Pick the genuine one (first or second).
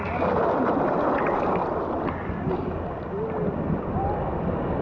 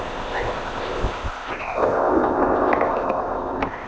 first